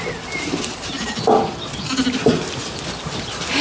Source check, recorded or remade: recorded